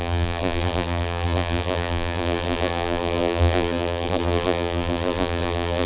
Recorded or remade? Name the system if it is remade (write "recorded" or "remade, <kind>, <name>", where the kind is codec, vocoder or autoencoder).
remade, vocoder, BigVGAN v2